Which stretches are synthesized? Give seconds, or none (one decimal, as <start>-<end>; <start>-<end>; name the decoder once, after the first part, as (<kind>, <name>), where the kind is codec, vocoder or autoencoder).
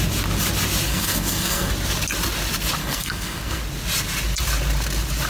0.9-1.7 (codec, SNAC); 2.8-3.6